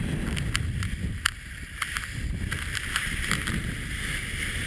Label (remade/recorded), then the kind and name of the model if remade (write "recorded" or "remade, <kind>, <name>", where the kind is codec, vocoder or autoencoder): recorded